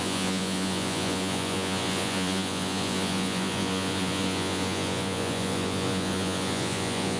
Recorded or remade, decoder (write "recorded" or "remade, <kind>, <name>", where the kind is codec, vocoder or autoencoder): remade, vocoder, Vocos